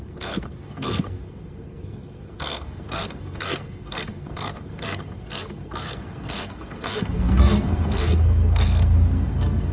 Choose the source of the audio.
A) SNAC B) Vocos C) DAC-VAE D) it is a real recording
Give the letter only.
A